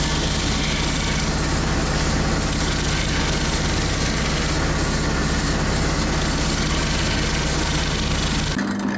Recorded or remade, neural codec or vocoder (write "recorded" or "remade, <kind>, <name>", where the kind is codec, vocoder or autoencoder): recorded